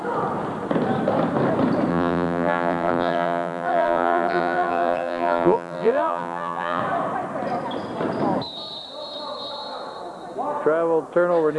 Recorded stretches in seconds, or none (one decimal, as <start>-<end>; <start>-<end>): 0.0-1.9; 6.8-11.6